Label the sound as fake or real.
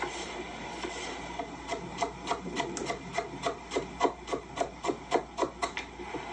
real